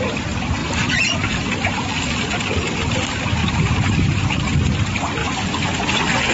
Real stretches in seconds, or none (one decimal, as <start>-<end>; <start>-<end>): 0.0-3.4; 4.2-5.2